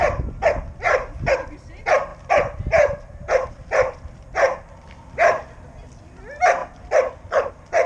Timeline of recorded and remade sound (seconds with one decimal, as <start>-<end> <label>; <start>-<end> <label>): 0.0-2.1 remade; 2.1-3.5 recorded; 3.5-6.6 remade; 6.6-7.5 recorded; 7.5-7.9 remade